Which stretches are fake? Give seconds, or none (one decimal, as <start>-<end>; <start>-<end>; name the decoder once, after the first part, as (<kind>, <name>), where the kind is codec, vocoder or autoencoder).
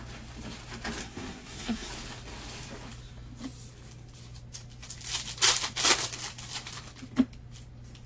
1.0-1.9 (codec, SNAC)